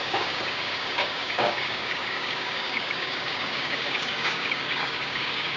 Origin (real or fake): fake